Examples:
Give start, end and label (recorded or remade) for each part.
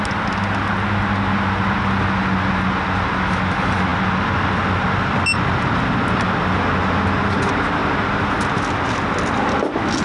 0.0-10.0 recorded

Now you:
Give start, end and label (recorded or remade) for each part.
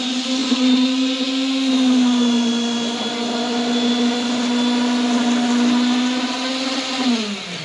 0.0-7.6 recorded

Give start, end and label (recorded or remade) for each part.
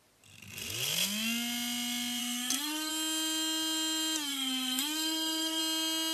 0.0-2.2 recorded; 2.2-2.9 remade; 2.9-4.3 recorded; 4.3-5.6 remade; 5.6-6.1 recorded